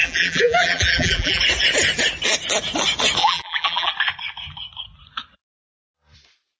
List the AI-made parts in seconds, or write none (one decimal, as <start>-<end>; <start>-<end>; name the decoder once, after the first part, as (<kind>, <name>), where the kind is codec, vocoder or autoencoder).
0.0-1.4 (vocoder, BigVGAN v2); 3.2-3.9